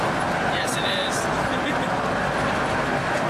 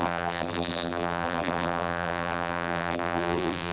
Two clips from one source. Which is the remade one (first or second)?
second